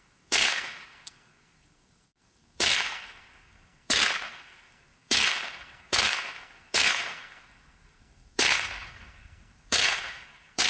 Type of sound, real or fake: fake